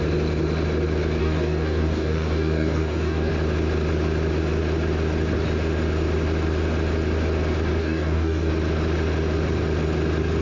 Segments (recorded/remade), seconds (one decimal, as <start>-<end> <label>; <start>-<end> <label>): 0.0-1.2 recorded; 1.2-3.3 remade; 3.3-7.8 recorded; 7.8-8.5 remade; 8.5-10.4 recorded